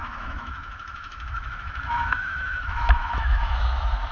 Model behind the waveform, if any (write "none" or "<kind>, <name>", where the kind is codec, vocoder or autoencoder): autoencoder, DAC-VAE